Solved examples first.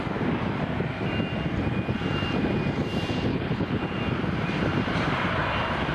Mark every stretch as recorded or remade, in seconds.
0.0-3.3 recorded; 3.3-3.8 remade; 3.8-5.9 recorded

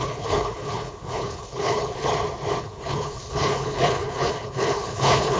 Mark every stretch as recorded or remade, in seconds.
0.0-2.1 remade; 2.1-2.6 recorded; 2.6-5.4 remade

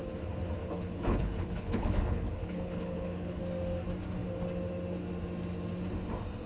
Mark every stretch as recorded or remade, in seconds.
0.0-0.6 recorded; 0.6-3.4 remade; 3.4-6.5 recorded

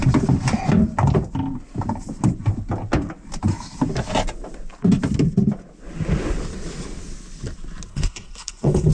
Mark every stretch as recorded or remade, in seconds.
0.0-7.9 recorded; 7.9-8.9 remade

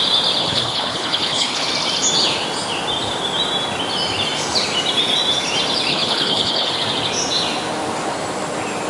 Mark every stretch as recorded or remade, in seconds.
0.0-0.4 recorded; 0.4-1.7 remade; 1.7-5.9 recorded; 5.9-6.7 remade; 6.7-8.9 recorded